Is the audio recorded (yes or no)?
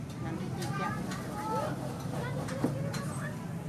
yes